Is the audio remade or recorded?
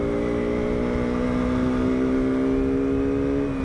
recorded